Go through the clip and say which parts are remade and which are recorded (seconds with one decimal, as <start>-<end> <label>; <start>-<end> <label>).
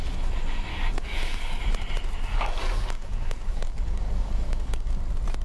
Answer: 0.0-0.7 recorded; 0.7-1.6 remade; 1.6-2.3 recorded; 2.3-5.0 remade; 5.0-5.4 recorded